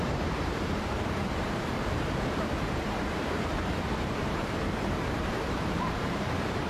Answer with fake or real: fake